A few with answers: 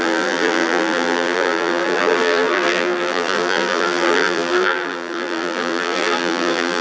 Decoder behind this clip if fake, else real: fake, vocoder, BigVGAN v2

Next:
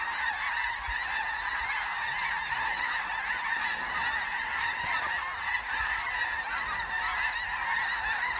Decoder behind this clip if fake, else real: real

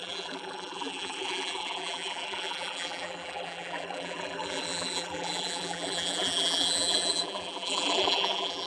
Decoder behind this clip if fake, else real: fake, vocoder, BigVGAN v2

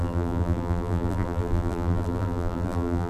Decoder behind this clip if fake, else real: fake, vocoder, BigVGAN v2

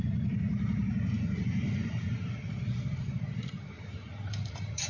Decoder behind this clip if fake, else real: fake, vocoder, BigVGAN v2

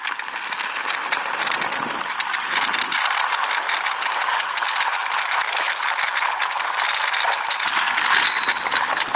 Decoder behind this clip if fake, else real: real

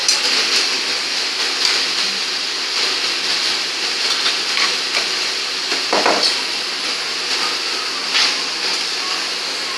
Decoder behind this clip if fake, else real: real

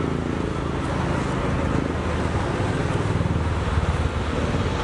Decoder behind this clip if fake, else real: real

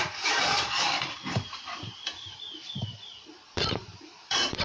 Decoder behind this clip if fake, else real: fake, vocoder, BigVGAN v2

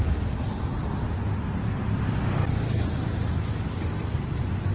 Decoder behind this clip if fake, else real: real